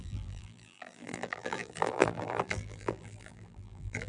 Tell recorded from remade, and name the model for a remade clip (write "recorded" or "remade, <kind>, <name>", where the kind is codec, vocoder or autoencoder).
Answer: remade, vocoder, BigVGAN v2